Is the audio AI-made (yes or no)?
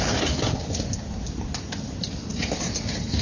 no